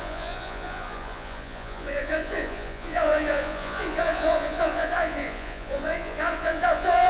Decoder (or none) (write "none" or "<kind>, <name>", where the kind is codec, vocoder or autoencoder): vocoder, Vocos